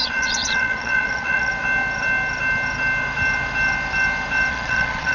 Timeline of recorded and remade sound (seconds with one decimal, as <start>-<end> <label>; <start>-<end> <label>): 0.0-1.5 remade; 1.5-4.5 recorded; 4.5-5.1 remade